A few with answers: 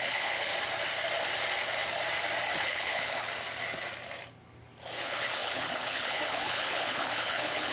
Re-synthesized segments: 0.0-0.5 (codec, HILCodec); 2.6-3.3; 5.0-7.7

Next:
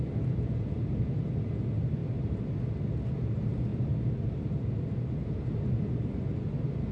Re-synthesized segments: none

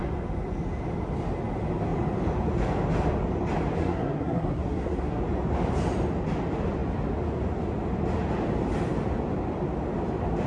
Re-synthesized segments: 3.8-5.2 (codec, SNAC)

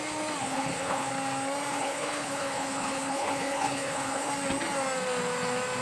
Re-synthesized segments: 0.4-1.1 (codec, HILCodec); 1.7-4.3